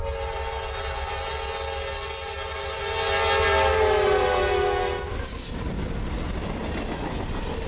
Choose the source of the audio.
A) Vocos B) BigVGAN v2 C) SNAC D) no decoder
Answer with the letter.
D